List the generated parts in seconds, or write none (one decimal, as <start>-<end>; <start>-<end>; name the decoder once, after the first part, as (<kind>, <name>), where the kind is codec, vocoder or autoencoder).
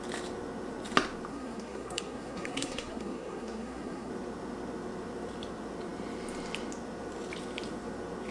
1.3-4.1 (codec, SNAC)